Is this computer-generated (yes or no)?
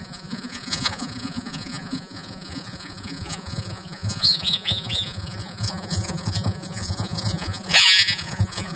yes